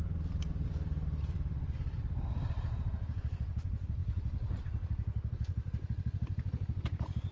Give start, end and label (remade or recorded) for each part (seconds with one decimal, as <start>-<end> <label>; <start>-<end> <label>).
0.0-7.3 recorded